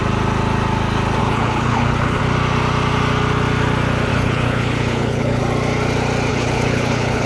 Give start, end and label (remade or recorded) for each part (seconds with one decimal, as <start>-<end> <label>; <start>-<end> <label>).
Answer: 0.0-1.2 recorded; 1.2-2.2 remade; 2.2-4.1 recorded; 4.1-5.4 remade; 5.4-6.3 recorded; 6.3-7.3 remade